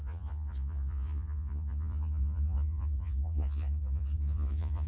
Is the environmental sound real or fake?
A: fake